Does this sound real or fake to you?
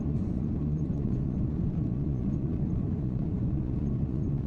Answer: fake